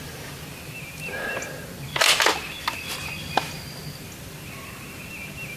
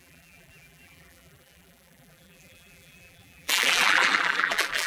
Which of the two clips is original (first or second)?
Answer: first